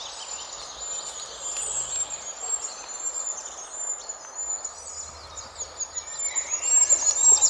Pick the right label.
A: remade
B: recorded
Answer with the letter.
B